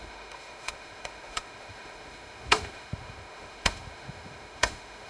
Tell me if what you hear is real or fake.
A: fake